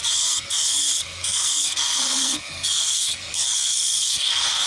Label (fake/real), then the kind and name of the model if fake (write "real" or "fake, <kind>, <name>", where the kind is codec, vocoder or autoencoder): fake, codec, SNAC